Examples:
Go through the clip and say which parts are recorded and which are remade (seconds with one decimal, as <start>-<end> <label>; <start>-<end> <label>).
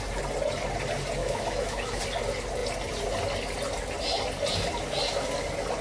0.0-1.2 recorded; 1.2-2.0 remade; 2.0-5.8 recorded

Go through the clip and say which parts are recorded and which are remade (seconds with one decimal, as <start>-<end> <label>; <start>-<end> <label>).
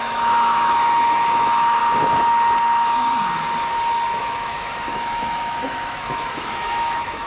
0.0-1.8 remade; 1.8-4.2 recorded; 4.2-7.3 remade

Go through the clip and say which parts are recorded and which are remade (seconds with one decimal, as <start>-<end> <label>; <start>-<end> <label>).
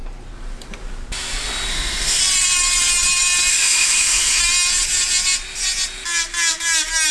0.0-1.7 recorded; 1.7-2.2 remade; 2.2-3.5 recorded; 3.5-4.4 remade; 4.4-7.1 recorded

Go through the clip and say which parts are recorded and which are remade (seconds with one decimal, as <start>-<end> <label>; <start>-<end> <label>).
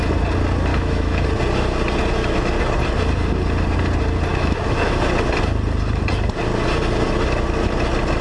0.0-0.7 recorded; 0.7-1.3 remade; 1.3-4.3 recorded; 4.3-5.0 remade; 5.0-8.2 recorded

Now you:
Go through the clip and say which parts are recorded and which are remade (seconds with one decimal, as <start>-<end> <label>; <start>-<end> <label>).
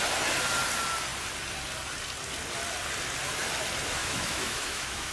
0.0-4.0 recorded; 4.0-5.1 remade